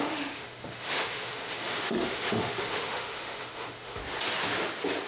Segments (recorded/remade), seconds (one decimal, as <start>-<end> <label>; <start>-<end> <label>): 0.0-4.0 remade; 4.0-5.1 recorded